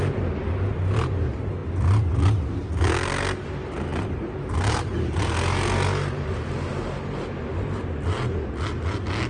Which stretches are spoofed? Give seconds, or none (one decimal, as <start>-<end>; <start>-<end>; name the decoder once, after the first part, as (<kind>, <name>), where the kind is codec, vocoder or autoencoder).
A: none